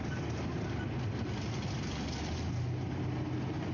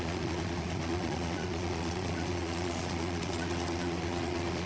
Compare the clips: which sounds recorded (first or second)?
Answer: first